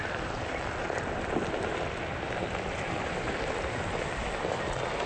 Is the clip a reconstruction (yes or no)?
no